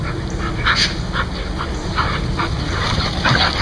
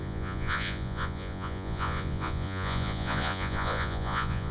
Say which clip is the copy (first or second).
second